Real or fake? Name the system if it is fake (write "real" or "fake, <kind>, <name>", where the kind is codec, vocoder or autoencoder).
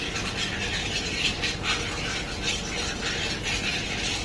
real